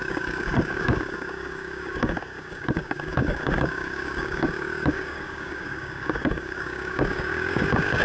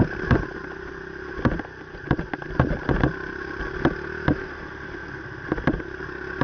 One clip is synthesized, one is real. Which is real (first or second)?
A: second